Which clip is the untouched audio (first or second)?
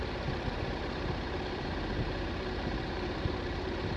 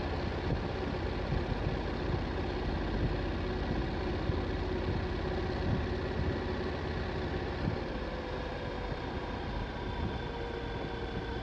second